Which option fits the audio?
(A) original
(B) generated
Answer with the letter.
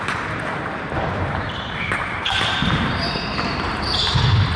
B